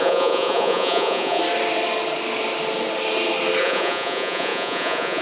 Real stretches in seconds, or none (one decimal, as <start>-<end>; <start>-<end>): 1.4-3.6